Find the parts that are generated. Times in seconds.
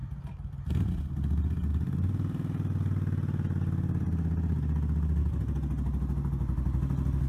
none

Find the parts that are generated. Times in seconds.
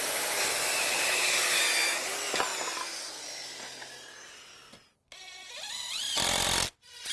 0.8-1.6 (codec, HILCodec)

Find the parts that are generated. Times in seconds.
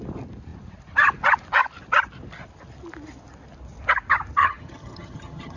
4.4-5.6 (vocoder, HiFi-GAN)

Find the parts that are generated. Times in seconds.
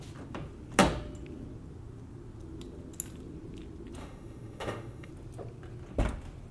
4.0-5.1 (autoencoder, DAC-VAE)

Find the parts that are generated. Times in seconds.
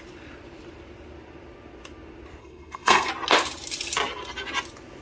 2.4-3.1 (codec, SNAC)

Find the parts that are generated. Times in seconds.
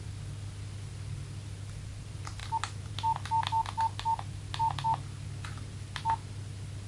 none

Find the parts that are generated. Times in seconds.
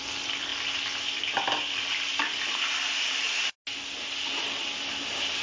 none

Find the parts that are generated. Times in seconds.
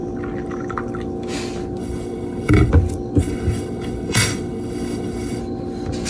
1.8-2.7 (codec, HILCodec); 3.2-5.4